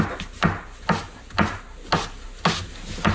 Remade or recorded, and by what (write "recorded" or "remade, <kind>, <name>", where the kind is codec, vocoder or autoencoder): recorded